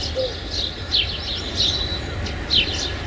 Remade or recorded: recorded